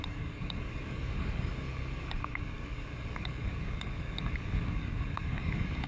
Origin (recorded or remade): remade